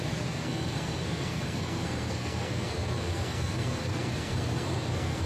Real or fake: fake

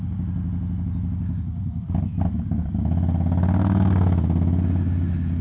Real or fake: real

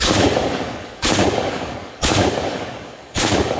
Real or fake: fake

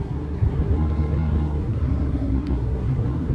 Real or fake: fake